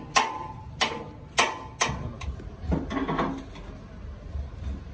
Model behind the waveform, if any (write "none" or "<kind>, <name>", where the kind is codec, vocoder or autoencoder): none